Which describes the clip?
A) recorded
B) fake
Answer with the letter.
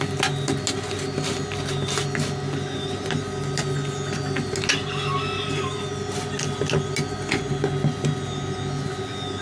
A